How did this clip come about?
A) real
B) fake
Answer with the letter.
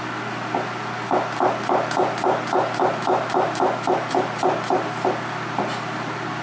A